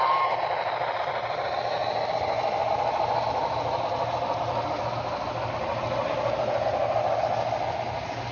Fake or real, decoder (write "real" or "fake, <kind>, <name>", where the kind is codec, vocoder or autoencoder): real